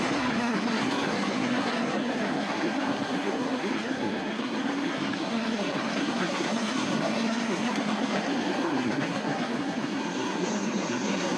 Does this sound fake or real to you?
fake